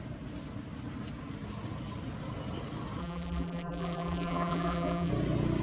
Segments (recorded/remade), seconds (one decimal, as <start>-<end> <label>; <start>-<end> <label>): 0.0-3.0 recorded; 3.0-5.1 remade; 5.1-5.6 recorded